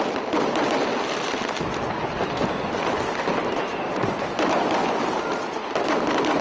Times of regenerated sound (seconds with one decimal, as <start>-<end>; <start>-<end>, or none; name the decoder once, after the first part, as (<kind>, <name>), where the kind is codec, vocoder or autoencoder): none